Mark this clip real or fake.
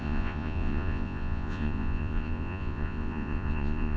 fake